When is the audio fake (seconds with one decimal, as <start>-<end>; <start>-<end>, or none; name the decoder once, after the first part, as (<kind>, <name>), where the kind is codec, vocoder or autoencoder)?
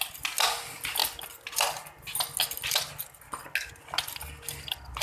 none